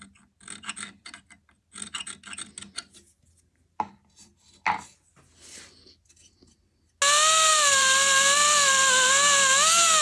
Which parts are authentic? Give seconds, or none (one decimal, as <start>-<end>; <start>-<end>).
0.0-7.5; 9.1-10.0